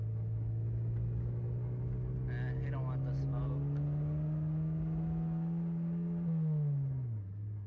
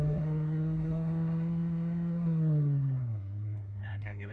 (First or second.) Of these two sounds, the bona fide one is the first